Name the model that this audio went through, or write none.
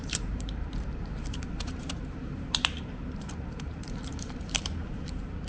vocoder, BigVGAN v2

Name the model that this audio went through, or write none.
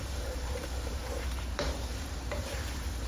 vocoder, BigVGAN v2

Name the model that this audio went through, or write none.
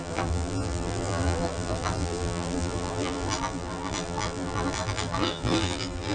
vocoder, BigVGAN v2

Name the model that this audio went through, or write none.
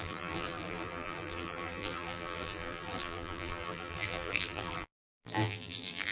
vocoder, BigVGAN v2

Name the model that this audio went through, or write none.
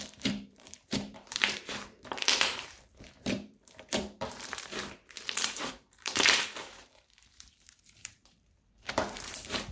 vocoder, BigVGAN v2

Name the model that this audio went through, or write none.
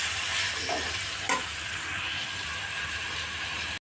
none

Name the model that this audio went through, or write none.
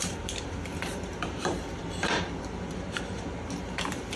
vocoder, BigVGAN v2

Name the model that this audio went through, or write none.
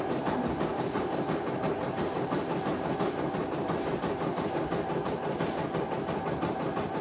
vocoder, BigVGAN v2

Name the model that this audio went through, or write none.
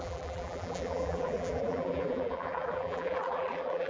vocoder, BigVGAN v2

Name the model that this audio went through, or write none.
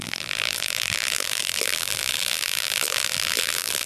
vocoder, BigVGAN v2